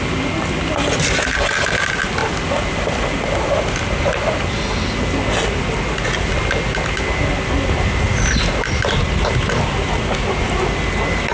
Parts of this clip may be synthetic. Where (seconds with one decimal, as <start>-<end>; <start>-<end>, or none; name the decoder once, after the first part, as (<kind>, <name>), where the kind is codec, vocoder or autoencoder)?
2.2-4.8 (vocoder, BigVGAN v2)